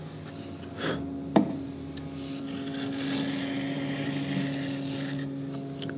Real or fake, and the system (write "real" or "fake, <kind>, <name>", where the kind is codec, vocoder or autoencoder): real